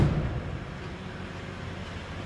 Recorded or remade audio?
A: recorded